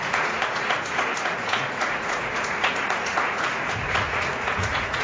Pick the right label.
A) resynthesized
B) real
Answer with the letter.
A